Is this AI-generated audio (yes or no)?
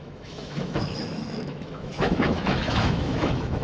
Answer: yes